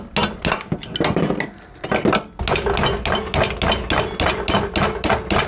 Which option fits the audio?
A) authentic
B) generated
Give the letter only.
A